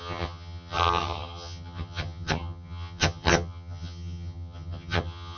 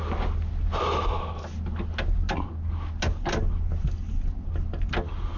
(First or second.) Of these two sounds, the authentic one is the second